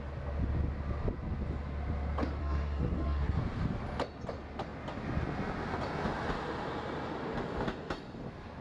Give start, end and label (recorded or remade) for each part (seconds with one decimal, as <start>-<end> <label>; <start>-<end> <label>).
0.0-2.4 recorded; 2.4-3.4 remade; 3.4-8.6 recorded